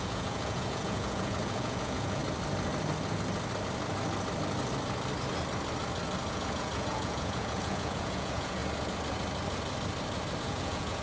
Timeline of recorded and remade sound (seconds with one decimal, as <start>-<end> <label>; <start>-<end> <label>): 0.0-2.2 remade; 2.2-6.3 recorded; 6.3-8.6 remade; 8.6-10.4 recorded; 10.4-11.0 remade